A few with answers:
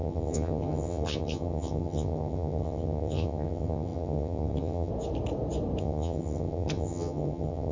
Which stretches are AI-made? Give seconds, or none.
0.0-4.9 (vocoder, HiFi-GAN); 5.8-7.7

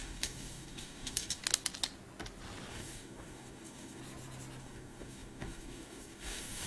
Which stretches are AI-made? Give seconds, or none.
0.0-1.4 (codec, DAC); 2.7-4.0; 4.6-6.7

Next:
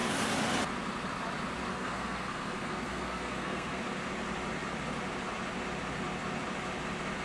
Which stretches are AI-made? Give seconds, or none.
1.7-3.8 (codec, SNAC)

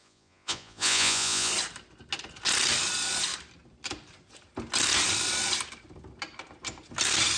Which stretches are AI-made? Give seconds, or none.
0.0-1.5 (vocoder, Vocos)

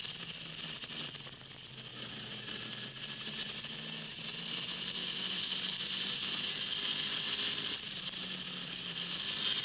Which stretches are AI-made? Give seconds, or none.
1.9-6.7 (vocoder, BigVGAN v2)